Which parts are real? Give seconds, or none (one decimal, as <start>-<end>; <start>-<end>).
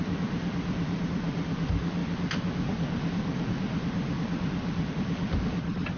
0.0-6.0